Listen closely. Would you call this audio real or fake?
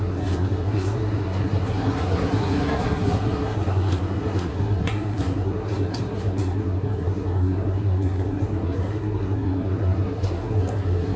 fake